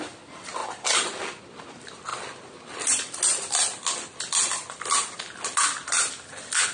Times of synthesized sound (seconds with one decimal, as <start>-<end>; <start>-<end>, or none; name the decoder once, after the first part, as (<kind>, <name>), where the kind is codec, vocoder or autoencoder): none